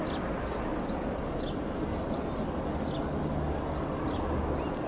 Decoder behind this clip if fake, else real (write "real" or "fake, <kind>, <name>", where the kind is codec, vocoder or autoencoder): real